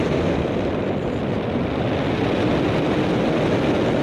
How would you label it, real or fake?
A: real